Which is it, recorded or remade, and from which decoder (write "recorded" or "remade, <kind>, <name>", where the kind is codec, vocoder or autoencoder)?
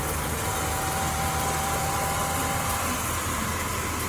recorded